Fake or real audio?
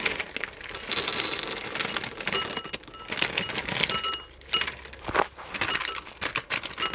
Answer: real